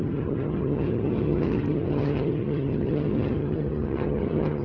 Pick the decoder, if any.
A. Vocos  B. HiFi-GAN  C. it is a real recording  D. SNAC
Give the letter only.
B